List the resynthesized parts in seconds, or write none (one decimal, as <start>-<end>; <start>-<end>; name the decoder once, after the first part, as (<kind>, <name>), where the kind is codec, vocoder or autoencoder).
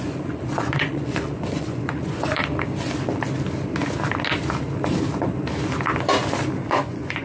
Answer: 0.0-2.4 (vocoder, Vocos); 6.7-7.2